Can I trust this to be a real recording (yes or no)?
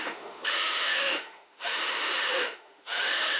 no